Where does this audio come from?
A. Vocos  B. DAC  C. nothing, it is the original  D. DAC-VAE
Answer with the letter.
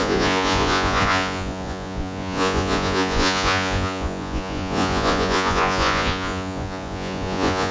A